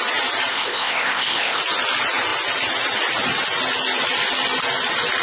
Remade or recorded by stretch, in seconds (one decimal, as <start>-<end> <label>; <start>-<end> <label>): 0.0-0.5 recorded; 0.5-1.6 remade; 1.6-5.2 recorded